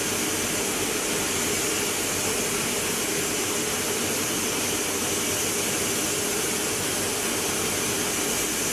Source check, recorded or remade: recorded